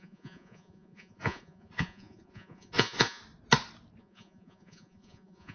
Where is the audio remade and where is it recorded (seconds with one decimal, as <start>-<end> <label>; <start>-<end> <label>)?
0.0-3.2 remade; 3.2-4.0 recorded; 4.0-5.5 remade

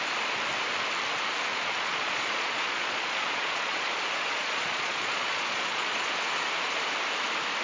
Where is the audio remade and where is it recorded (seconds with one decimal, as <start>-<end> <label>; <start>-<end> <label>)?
0.0-1.5 recorded; 1.5-6.1 remade; 6.1-7.6 recorded

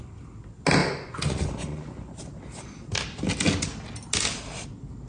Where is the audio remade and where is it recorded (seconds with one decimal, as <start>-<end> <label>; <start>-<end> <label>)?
0.0-0.8 recorded; 0.8-2.2 remade; 2.2-5.1 recorded

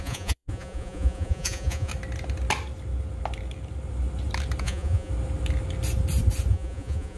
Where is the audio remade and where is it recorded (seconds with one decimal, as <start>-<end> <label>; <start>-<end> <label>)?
0.0-1.9 remade; 1.9-4.6 recorded; 4.6-5.1 remade; 5.1-6.5 recorded; 6.5-7.2 remade

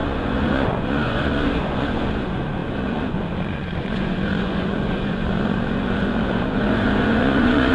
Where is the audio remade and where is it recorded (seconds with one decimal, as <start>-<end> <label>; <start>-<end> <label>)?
0.0-7.7 remade

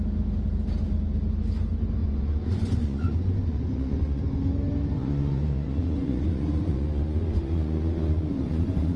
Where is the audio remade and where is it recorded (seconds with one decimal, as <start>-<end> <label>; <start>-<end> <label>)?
0.0-2.0 recorded; 2.0-4.2 remade; 4.2-5.0 recorded; 5.0-9.0 remade

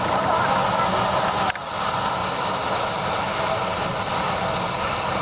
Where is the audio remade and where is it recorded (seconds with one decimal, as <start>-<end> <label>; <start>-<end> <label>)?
0.0-5.2 recorded